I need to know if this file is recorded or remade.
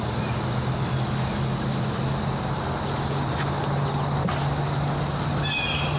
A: recorded